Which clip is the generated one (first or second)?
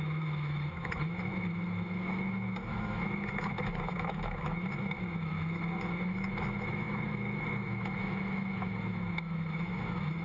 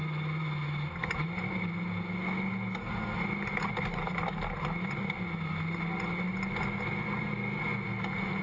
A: first